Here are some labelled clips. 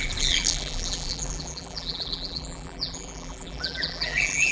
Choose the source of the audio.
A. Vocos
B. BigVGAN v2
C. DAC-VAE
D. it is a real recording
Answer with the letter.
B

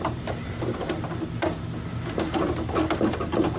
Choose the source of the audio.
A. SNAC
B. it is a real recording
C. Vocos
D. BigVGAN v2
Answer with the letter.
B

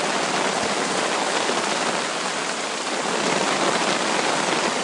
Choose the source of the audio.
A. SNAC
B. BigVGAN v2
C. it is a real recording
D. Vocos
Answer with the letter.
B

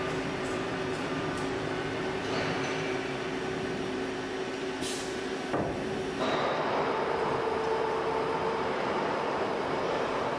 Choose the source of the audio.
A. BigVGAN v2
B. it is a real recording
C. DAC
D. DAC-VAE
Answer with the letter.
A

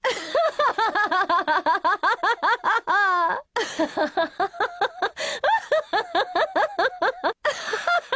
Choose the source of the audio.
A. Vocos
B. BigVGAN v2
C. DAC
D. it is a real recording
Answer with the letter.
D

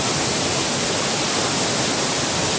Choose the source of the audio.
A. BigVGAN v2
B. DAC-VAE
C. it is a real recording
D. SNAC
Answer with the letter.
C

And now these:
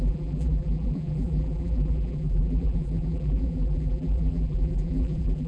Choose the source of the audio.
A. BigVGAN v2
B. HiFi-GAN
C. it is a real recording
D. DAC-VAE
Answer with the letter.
A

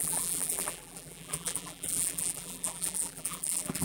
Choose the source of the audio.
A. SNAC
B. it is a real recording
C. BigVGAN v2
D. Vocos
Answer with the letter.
C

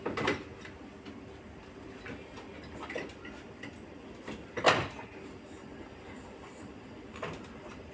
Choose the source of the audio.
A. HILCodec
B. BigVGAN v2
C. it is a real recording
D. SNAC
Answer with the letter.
C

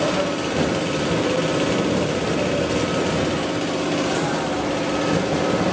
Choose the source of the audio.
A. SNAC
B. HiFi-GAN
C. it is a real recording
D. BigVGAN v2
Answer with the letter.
C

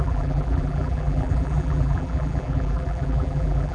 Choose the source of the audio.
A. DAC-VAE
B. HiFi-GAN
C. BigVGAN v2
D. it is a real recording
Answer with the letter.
C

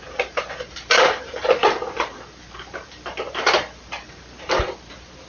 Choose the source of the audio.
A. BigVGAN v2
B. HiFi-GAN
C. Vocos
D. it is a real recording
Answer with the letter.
A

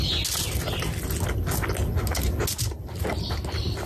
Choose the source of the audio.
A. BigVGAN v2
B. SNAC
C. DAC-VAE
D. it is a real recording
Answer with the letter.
D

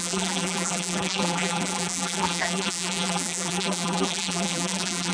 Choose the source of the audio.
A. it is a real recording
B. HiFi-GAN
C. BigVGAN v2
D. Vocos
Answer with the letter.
C